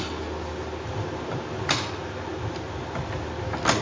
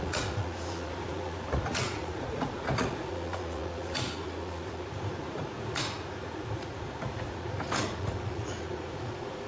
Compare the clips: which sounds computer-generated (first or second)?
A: second